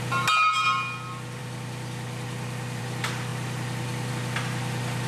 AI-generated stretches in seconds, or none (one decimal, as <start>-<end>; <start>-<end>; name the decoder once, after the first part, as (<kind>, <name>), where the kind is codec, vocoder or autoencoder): none